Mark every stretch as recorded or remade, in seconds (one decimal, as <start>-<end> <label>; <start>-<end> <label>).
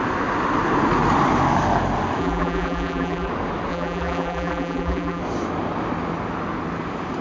0.0-2.2 recorded; 2.2-3.3 remade; 3.3-3.7 recorded; 3.7-5.2 remade; 5.2-7.2 recorded